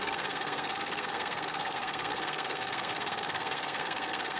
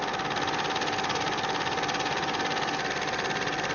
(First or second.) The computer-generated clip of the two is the first